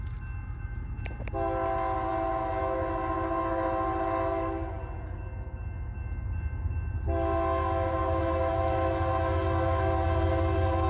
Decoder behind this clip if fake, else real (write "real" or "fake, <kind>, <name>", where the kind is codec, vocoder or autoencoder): real